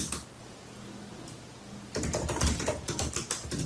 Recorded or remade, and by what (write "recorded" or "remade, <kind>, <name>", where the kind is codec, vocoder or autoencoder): recorded